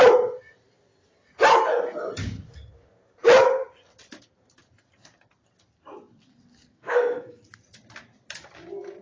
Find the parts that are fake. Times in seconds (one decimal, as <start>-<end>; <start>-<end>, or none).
6.7-7.4